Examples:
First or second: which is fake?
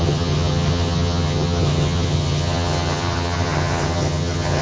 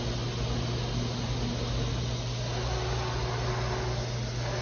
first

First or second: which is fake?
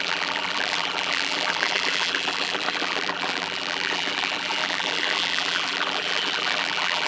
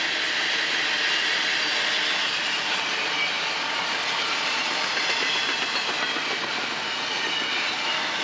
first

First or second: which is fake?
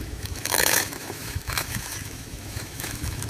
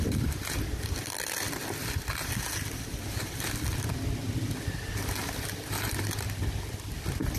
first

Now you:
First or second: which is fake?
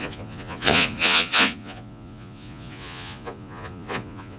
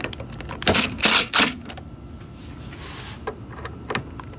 first